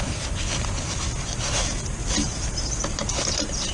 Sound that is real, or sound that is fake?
real